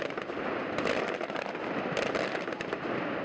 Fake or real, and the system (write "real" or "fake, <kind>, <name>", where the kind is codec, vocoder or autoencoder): real